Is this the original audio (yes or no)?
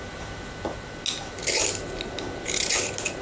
yes